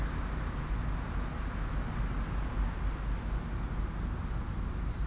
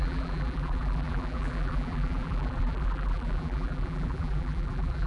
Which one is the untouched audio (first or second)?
first